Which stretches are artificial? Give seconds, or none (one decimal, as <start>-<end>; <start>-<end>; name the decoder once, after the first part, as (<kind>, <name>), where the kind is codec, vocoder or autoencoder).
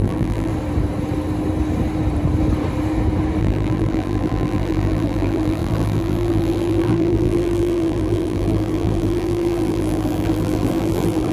0.0-0.5 (vocoder, BigVGAN v2); 3.4-11.3